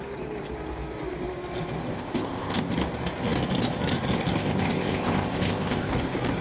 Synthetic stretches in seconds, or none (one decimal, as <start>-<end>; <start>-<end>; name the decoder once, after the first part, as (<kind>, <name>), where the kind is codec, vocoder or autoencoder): 1.9-2.7 (codec, ZipCodec); 4.4-5.9